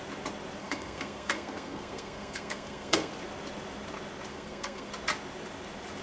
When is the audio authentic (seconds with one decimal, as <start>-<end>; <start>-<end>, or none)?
0.0-0.6; 3.1-4.3; 4.9-6.0